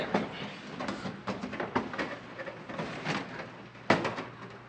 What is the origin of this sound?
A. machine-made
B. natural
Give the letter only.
B